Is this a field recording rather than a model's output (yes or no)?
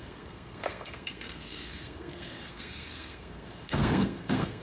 no